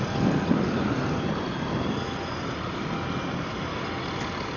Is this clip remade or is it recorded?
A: recorded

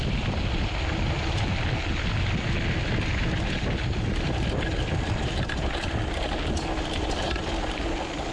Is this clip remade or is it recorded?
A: recorded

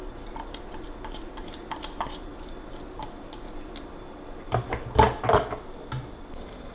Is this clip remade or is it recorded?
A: recorded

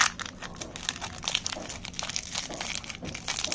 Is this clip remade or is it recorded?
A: recorded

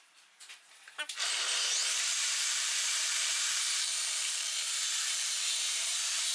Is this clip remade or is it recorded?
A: remade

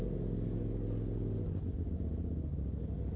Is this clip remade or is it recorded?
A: recorded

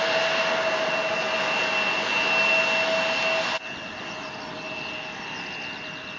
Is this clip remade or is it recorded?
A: recorded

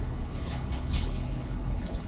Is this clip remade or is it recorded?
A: remade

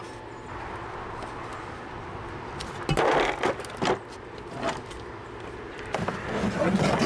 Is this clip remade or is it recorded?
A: recorded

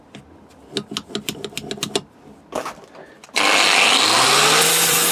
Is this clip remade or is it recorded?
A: recorded